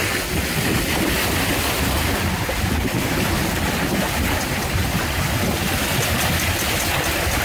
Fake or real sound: real